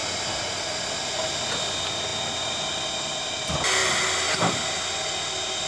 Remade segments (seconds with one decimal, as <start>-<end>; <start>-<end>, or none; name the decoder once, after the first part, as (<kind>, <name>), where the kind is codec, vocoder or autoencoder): 3.8-4.5 (vocoder, BigVGAN v2)